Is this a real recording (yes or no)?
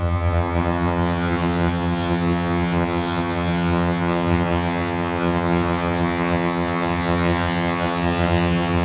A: no